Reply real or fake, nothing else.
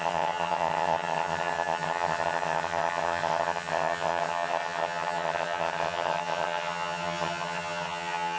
fake